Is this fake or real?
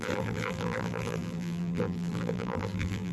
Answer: fake